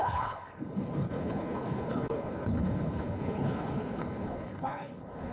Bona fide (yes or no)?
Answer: no